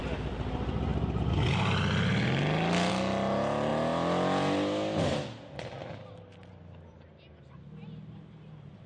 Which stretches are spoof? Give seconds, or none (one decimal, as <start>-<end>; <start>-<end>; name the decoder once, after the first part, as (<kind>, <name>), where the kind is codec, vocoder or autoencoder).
none